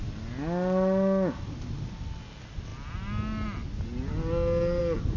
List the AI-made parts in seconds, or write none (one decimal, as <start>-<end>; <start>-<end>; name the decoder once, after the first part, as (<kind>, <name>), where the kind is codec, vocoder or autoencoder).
none